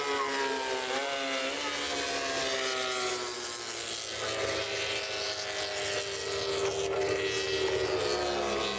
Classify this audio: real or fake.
real